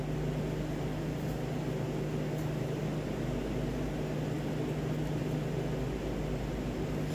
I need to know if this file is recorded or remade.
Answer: recorded